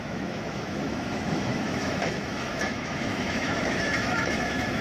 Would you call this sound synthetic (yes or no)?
yes